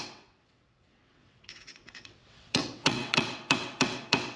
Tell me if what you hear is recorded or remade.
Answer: remade